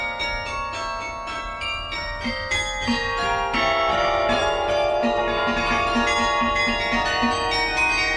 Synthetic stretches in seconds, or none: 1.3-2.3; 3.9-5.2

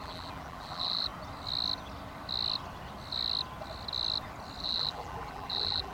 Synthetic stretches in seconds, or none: 0.0-1.1; 4.6-5.9